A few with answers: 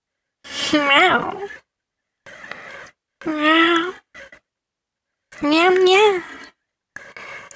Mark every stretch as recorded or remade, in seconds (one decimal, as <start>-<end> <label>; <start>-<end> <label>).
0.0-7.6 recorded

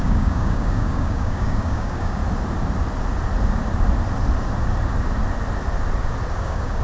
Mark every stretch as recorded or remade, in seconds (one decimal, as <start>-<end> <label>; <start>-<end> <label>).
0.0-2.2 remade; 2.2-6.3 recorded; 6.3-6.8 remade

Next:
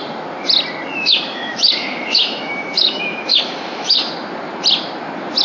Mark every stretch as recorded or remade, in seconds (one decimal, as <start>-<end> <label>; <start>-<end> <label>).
0.0-0.9 recorded; 0.9-4.1 remade; 4.1-5.4 recorded

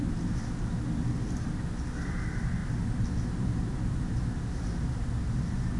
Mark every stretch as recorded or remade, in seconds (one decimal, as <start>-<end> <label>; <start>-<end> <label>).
0.0-5.8 recorded

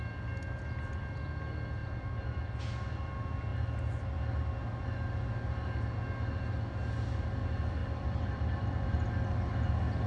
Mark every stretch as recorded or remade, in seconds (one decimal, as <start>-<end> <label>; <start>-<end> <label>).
0.0-1.8 recorded; 1.8-2.6 remade; 2.6-7.8 recorded; 7.8-9.1 remade; 9.1-10.1 recorded